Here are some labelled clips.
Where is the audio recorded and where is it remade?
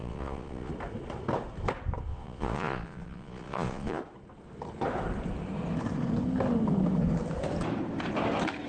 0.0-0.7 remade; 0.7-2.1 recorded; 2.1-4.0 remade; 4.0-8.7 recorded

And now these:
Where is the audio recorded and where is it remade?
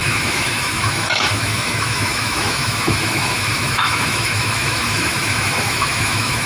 0.0-6.5 remade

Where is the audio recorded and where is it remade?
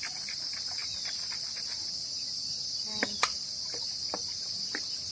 0.0-0.8 recorded; 0.8-1.6 remade; 1.6-5.1 recorded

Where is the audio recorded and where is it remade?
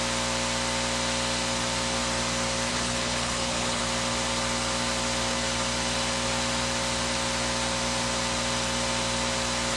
0.0-2.7 recorded; 2.7-3.8 remade; 3.8-9.8 recorded